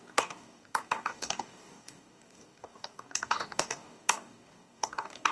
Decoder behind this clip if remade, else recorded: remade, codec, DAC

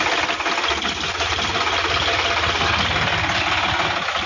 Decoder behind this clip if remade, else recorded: recorded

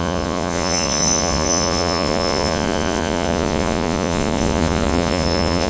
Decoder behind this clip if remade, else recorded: remade, vocoder, Vocos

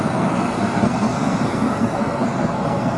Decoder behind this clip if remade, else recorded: remade, codec, SNAC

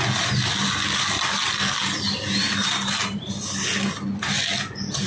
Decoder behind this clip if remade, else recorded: recorded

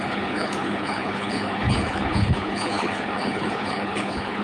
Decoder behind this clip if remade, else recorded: remade, codec, HILCodec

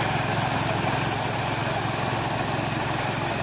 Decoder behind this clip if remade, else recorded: recorded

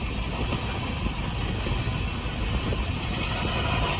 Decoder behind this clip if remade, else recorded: recorded